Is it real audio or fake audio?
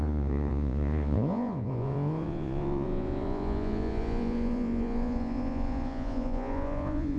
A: fake